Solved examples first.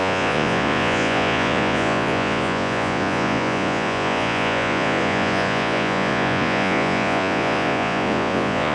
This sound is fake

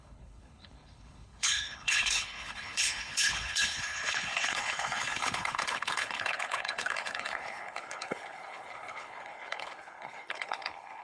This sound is fake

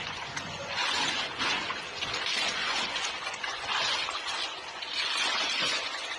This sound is fake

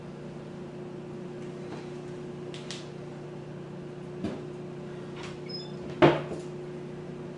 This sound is real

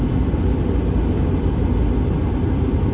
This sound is real